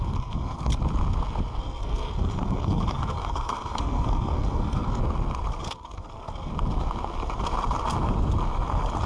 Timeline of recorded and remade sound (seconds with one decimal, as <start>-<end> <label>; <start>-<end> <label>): 0.0-0.7 remade; 0.7-1.6 recorded; 1.6-5.0 remade; 5.0-5.6 recorded; 5.6-6.5 remade; 6.5-9.1 recorded